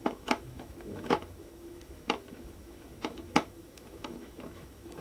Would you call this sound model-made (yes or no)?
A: yes